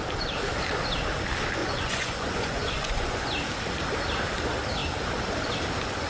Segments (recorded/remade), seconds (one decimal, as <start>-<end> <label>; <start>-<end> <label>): 0.0-1.6 recorded; 1.6-3.3 remade; 3.3-6.1 recorded